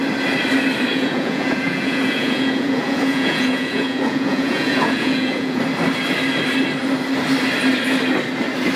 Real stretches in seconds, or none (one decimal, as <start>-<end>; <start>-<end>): 0.0-0.9; 5.6-8.8